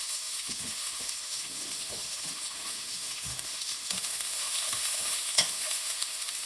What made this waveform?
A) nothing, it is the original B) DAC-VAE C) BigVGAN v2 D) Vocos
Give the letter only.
B